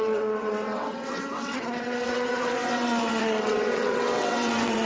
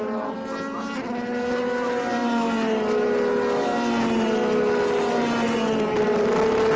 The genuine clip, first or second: second